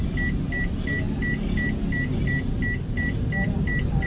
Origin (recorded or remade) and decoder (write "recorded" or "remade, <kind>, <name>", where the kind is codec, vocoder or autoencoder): recorded